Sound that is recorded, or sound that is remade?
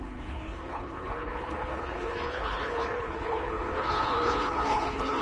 remade